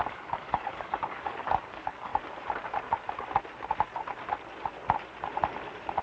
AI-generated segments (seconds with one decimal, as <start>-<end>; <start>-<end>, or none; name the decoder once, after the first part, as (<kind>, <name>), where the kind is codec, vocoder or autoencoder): 0.0-2.1 (codec, DAC)